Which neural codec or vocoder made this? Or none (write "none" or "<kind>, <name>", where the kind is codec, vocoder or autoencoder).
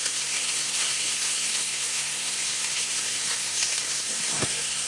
codec, SNAC